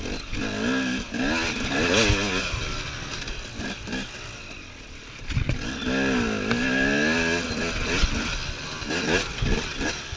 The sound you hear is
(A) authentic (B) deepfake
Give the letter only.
A